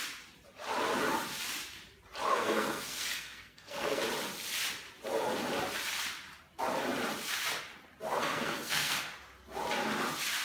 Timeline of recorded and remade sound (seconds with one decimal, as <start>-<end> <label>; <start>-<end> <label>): 0.0-2.3 recorded; 2.3-4.0 remade; 4.0-8.2 recorded; 8.2-9.1 remade; 9.1-10.4 recorded